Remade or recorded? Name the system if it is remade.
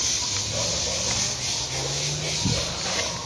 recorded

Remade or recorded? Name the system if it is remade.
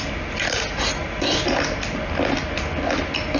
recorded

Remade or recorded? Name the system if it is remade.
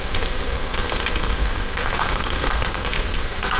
remade, codec, SNAC